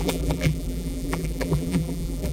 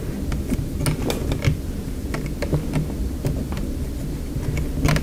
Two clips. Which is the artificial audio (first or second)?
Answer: first